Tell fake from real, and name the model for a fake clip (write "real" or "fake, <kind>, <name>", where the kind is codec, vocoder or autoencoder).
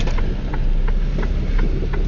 real